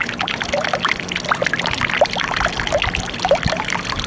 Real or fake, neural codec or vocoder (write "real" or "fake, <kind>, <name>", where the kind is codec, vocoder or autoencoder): real